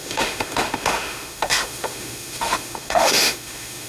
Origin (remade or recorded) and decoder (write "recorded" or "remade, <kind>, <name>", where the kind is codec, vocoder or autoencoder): remade, autoencoder, DAC-VAE